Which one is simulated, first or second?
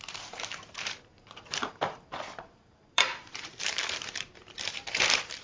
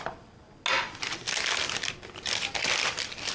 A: first